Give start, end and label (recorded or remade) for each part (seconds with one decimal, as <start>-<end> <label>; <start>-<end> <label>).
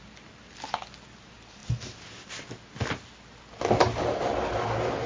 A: 0.0-5.1 recorded